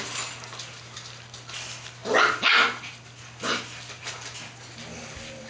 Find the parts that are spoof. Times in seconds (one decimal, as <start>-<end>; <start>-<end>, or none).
none